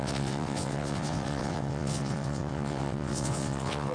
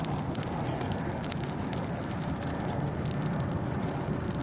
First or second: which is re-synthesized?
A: first